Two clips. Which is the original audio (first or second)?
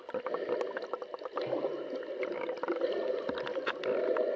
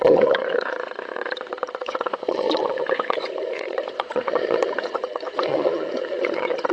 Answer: first